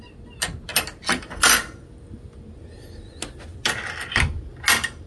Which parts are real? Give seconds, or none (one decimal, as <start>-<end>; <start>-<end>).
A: 0.0-5.1